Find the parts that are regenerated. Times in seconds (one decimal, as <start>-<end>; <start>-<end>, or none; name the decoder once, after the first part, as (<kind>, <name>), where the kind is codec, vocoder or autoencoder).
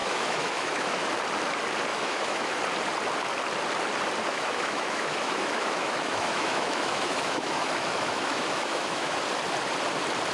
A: 0.0-1.1 (autoencoder, DAC-VAE); 1.9-2.6; 4.3-9.2